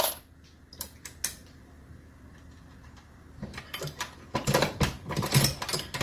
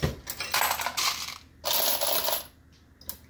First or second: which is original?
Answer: second